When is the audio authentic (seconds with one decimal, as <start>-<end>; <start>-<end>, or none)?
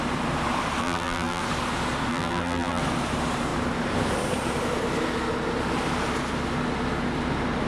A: 0.0-0.8; 1.4-2.1; 2.8-7.7